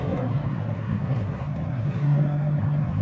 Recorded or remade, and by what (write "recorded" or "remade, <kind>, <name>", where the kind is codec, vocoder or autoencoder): remade, codec, SNAC